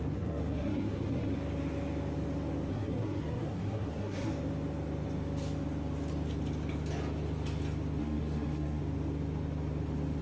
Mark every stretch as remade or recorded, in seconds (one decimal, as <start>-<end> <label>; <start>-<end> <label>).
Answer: 0.0-1.4 remade; 1.4-2.7 recorded; 2.7-4.3 remade; 4.3-8.0 recorded; 8.0-8.8 remade; 8.8-10.2 recorded